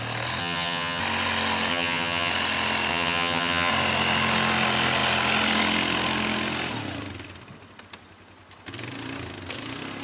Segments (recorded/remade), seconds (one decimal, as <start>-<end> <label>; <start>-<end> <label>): 0.0-0.4 recorded; 0.4-1.0 remade; 1.0-1.7 recorded; 1.7-2.3 remade; 2.3-2.9 recorded; 2.9-3.7 remade; 3.7-10.0 recorded